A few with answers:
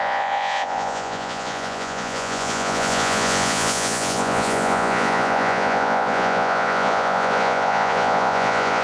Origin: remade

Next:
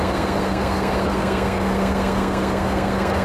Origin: remade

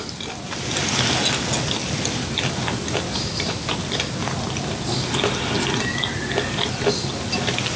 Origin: recorded